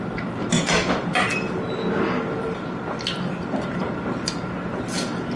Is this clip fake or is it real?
real